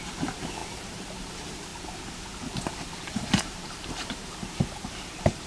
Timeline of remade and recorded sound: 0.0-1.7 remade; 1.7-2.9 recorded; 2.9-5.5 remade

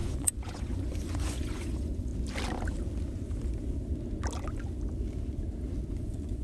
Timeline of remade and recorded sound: 0.0-2.1 remade; 2.1-5.9 recorded; 5.9-6.4 remade

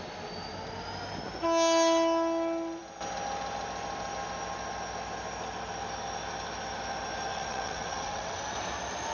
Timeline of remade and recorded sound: 0.0-7.3 recorded; 7.3-8.4 remade; 8.4-9.1 recorded

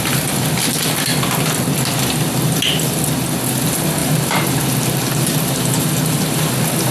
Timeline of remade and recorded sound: 0.0-4.0 recorded; 4.0-6.5 remade; 6.5-6.9 recorded

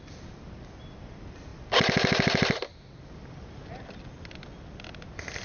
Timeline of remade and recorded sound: 0.0-5.4 recorded